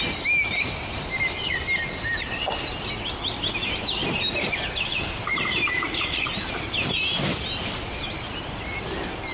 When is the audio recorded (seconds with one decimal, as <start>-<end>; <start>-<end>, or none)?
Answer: 0.0-4.0; 7.2-9.3